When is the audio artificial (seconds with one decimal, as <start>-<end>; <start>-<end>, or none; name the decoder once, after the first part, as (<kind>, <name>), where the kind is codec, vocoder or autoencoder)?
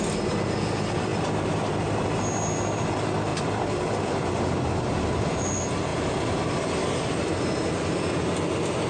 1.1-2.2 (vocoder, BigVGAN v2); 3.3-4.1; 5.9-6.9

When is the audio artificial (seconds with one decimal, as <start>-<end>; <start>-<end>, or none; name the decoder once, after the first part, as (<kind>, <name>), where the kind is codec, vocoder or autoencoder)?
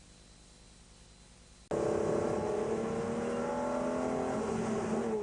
none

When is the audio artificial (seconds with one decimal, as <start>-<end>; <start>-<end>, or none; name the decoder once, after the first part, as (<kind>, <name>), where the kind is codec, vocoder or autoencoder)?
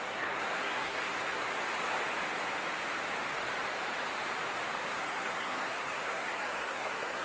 0.0-1.4 (codec, SNAC); 4.9-7.2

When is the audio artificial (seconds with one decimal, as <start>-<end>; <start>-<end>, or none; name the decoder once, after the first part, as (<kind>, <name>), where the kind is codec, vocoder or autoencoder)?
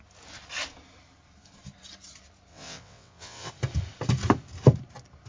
2.5-3.5 (vocoder, WaveNeXt)